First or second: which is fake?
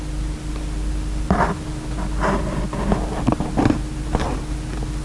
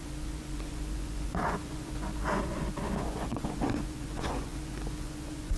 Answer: second